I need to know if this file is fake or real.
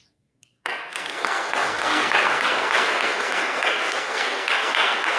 fake